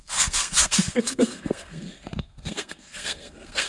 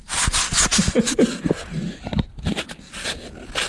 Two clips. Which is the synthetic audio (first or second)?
first